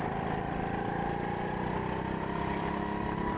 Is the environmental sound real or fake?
real